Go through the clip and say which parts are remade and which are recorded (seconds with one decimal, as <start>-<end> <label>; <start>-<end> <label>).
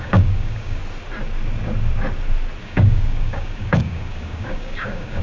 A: 0.0-0.8 remade; 0.8-2.6 recorded; 2.6-5.2 remade